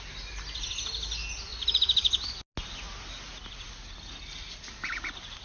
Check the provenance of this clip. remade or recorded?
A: recorded